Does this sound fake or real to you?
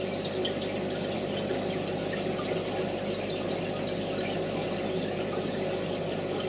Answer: real